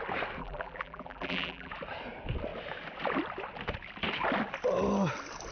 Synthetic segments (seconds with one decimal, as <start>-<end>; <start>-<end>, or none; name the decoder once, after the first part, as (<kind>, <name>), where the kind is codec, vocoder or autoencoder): 0.4-1.7 (vocoder, BigVGAN v2)